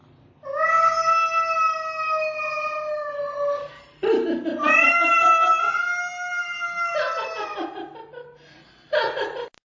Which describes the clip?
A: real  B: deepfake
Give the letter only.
A